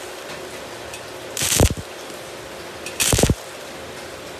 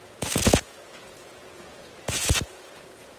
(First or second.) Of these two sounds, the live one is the first